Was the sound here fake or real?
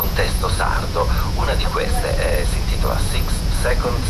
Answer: fake